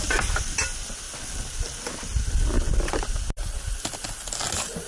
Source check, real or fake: real